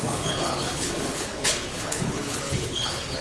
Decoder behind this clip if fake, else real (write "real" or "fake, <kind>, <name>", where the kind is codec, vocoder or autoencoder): fake, codec, HILCodec